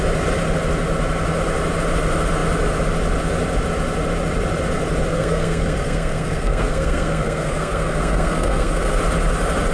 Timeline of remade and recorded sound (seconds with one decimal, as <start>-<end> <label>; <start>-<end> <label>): 0.0-5.1 recorded; 5.1-9.0 remade; 9.0-9.7 recorded